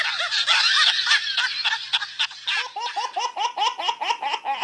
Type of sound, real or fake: real